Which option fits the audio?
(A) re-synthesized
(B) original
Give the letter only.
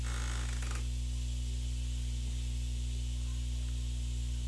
B